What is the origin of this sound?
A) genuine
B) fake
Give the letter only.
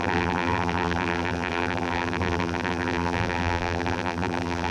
B